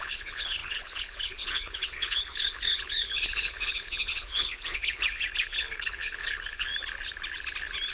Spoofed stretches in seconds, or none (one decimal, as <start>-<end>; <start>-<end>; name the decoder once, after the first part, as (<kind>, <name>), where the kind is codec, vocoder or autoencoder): 0.0-6.7 (codec, HILCodec)